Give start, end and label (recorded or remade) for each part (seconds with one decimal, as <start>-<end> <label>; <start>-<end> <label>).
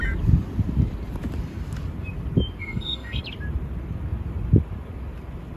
0.0-2.6 recorded; 2.6-3.2 remade; 3.2-5.6 recorded